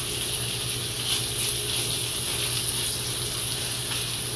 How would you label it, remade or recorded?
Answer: recorded